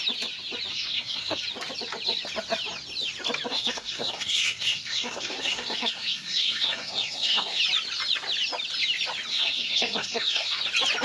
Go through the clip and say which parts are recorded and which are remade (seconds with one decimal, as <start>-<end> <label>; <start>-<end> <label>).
0.0-0.7 recorded; 0.7-1.4 remade; 1.4-3.5 recorded; 3.5-7.6 remade; 7.6-9.3 recorded; 9.3-10.6 remade; 10.6-11.0 recorded